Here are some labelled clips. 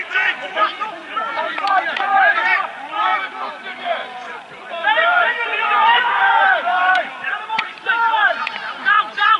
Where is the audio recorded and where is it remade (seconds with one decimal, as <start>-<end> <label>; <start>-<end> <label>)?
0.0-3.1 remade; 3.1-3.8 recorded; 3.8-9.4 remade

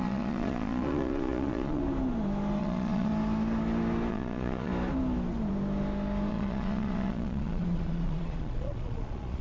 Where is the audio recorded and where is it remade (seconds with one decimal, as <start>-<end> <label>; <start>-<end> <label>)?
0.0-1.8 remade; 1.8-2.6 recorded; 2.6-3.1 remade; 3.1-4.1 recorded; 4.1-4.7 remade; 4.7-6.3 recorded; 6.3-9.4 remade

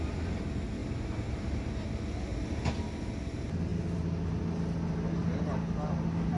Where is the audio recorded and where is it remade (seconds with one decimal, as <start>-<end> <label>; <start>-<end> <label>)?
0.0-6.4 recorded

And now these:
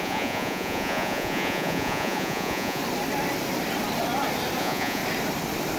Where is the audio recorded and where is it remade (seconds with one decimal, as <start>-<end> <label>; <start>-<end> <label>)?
0.0-2.8 remade; 2.8-4.6 recorded; 4.6-5.0 remade; 5.0-5.8 recorded

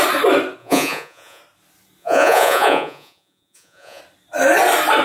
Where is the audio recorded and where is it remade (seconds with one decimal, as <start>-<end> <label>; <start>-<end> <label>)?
0.0-0.6 recorded; 0.6-1.4 remade; 1.4-2.0 recorded; 2.0-4.0 remade; 4.0-5.0 recorded